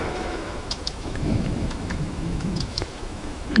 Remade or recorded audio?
remade